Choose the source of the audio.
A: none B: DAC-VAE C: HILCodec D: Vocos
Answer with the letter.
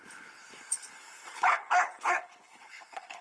C